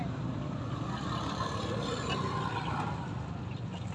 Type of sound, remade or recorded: recorded